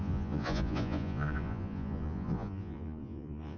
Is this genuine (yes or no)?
no